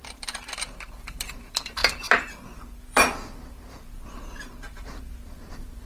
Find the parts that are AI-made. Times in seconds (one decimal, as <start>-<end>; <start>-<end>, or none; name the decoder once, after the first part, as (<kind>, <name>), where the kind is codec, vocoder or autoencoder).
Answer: 0.0-1.8 (vocoder, BigVGAN v2); 2.3-5.9